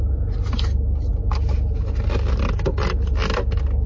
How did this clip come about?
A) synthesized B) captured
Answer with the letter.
B